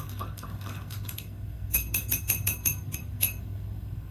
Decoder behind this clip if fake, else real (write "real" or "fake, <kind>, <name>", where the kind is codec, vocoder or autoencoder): fake, codec, SNAC